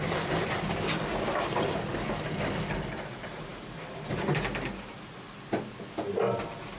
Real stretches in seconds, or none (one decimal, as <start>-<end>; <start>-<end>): none